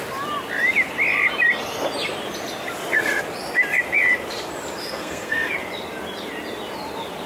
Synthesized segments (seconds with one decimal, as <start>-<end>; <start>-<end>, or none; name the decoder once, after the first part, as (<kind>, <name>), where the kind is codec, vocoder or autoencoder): 4.8-5.5 (codec, SNAC)